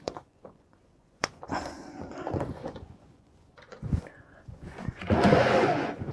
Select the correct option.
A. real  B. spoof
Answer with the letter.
B